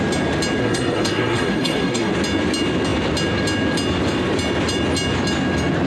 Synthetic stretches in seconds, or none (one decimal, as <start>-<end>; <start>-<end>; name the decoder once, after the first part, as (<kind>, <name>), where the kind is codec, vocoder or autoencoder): 0.6-2.1 (codec, SNAC)